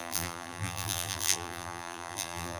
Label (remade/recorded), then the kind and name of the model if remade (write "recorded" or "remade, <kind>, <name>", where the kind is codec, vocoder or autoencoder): remade, vocoder, BigVGAN v2